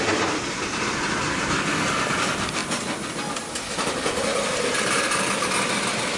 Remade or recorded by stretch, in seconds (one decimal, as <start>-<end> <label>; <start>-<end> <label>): 0.0-6.2 recorded